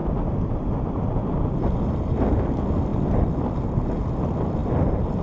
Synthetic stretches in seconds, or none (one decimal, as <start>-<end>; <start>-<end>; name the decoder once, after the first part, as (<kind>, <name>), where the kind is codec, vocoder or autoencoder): none